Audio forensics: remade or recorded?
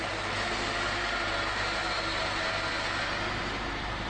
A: recorded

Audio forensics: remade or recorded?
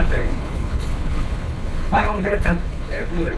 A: remade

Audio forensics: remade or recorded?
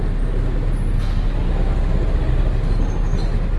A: recorded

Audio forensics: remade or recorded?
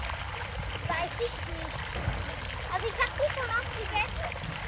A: recorded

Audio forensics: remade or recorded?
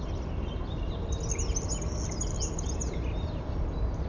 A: recorded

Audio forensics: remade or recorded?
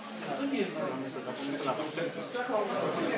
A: recorded